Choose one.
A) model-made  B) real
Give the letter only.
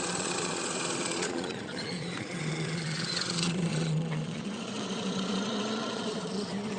A